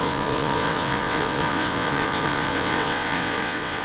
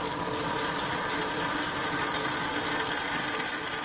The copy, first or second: first